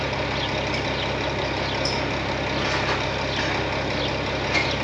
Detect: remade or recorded recorded